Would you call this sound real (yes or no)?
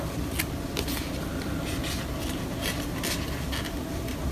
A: yes